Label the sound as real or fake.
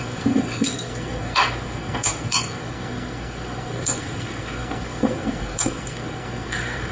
fake